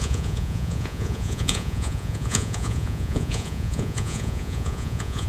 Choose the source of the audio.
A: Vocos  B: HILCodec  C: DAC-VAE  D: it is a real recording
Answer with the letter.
A